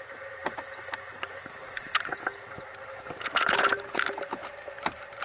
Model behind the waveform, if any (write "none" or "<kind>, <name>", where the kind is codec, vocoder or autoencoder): none